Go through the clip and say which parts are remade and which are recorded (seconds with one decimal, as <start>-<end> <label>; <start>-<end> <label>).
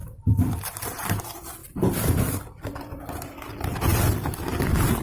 0.0-3.9 remade; 3.9-4.6 recorded; 4.6-5.0 remade